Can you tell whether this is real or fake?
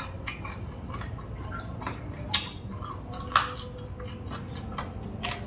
real